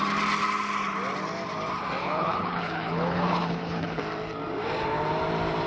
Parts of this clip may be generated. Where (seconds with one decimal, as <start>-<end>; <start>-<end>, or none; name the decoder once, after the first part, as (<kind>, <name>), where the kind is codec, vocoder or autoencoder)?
2.0-4.0 (codec, HILCodec)